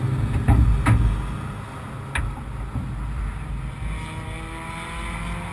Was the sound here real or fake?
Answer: real